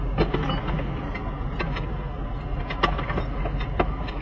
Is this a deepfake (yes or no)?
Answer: no